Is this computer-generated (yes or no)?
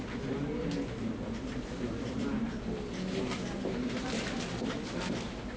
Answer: no